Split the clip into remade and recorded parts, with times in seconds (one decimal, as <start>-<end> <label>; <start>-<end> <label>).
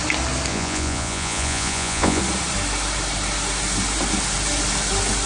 0.0-0.5 recorded; 0.5-2.2 remade; 2.2-5.3 recorded